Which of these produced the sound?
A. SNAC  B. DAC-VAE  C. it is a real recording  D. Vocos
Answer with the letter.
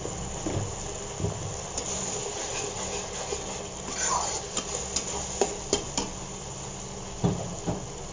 C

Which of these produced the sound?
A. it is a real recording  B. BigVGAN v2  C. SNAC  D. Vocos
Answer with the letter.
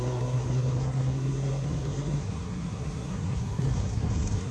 C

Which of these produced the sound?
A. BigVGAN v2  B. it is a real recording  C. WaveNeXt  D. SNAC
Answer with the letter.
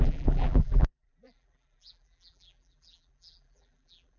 A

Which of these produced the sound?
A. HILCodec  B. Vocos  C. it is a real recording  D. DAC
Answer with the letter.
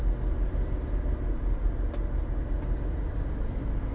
C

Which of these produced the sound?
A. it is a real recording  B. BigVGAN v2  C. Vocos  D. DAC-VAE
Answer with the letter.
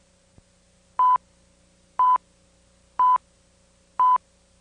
A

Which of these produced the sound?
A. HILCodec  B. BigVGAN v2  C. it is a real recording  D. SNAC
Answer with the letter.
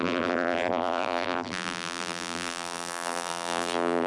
B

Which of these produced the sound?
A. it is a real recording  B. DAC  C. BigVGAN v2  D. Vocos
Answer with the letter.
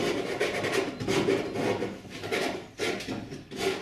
A